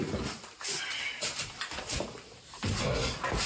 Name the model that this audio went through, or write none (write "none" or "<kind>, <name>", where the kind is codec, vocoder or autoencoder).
none